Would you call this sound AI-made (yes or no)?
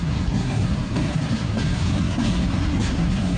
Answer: yes